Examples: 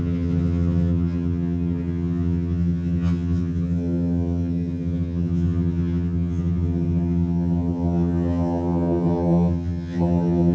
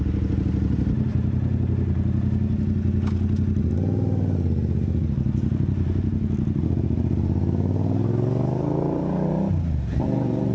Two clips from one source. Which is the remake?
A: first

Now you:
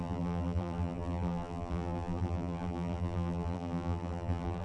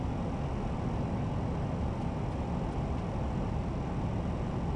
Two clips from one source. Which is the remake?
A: first